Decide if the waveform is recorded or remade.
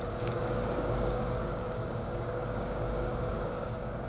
remade